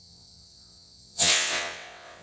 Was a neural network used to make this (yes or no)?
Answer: yes